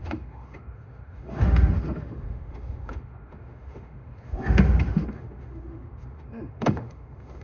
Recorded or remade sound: remade